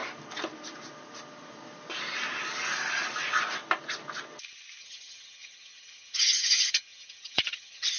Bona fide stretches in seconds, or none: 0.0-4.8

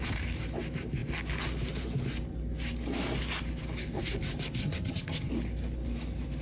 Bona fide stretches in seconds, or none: 0.0-4.6; 5.3-6.4